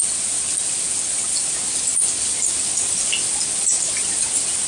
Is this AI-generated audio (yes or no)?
no